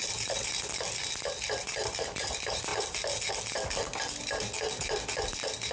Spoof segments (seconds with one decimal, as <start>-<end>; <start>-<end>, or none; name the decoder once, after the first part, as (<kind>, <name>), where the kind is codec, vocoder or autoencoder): 2.7-3.3 (vocoder, BigVGAN v2)